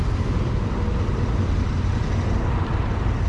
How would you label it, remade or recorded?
remade